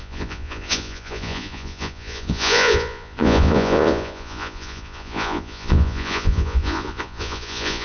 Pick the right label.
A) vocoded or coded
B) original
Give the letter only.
A